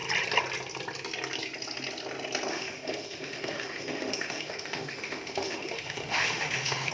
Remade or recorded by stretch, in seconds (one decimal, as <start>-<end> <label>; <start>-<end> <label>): 0.0-2.5 recorded; 2.5-6.9 remade